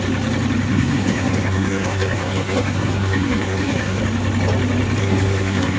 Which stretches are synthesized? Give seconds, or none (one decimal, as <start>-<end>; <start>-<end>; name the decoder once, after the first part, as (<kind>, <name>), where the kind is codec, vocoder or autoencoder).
0.7-4.0 (codec, SNAC); 5.0-5.8